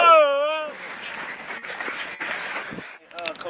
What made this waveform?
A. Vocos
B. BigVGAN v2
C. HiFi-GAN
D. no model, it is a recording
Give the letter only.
D